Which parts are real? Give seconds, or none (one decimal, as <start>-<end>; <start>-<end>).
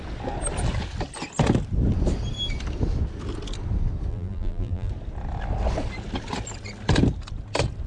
0.0-4.1; 4.9-7.9